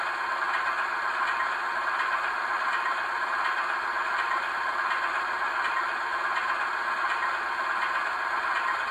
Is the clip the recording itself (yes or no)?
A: yes